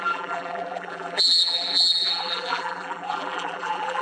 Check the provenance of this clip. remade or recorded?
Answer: remade